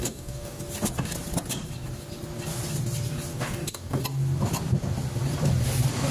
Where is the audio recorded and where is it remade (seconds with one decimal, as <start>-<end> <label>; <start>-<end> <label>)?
0.0-0.6 remade; 0.6-3.3 recorded; 3.3-4.0 remade; 4.0-6.1 recorded